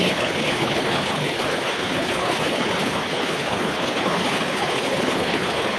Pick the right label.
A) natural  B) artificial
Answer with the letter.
B